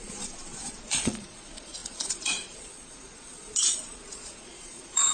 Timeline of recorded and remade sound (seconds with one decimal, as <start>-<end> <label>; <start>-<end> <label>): 0.0-5.1 remade